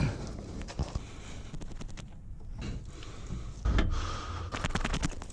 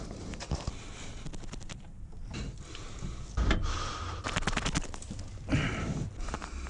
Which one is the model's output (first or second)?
second